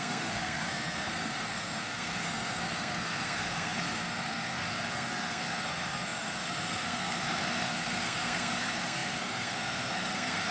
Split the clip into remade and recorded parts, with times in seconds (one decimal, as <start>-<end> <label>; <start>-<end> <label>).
0.0-10.5 remade

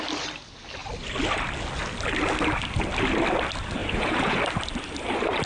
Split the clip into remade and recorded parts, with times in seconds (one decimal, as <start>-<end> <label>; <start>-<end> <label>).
0.0-3.8 recorded; 3.8-4.4 remade; 4.4-5.5 recorded